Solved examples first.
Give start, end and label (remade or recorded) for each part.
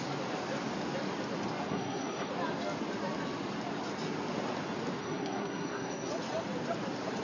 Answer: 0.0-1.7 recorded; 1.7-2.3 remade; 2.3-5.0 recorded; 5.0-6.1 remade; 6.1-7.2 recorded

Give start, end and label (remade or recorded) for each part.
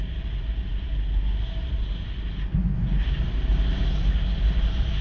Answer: 0.0-5.0 recorded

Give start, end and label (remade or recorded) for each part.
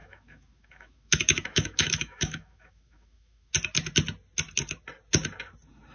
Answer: 0.0-3.5 remade; 3.5-5.9 recorded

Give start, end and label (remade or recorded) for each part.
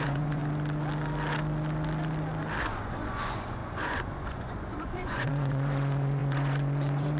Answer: 0.0-0.4 remade; 0.4-2.6 recorded; 2.6-7.2 remade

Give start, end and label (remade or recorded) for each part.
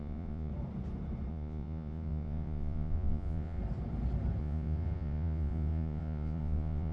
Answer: 0.0-0.5 remade; 0.5-1.3 recorded; 1.3-3.6 remade; 3.6-4.4 recorded; 4.4-6.9 remade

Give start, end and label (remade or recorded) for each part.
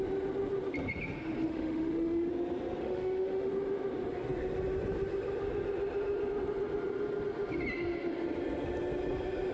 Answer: 0.0-1.5 recorded; 1.5-2.3 remade; 2.3-2.8 recorded; 2.8-3.5 remade; 3.5-9.5 recorded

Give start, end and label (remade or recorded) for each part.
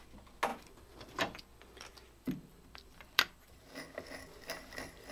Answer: 0.0-0.5 recorded; 0.5-3.6 remade; 3.6-5.1 recorded